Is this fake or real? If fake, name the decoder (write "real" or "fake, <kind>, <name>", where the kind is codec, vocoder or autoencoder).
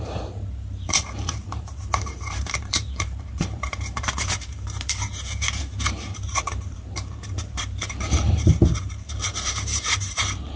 fake, vocoder, BigVGAN v2